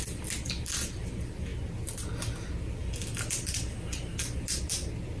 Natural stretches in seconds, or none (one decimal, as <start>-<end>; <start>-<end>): 0.0-5.2